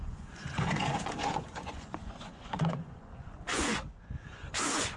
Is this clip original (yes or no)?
no